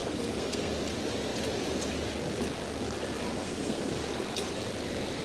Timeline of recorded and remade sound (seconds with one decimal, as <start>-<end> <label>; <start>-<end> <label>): 0.0-0.7 remade; 0.7-3.3 recorded; 3.3-3.9 remade; 3.9-5.2 recorded